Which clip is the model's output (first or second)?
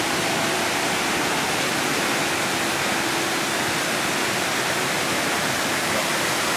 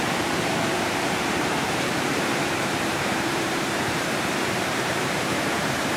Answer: second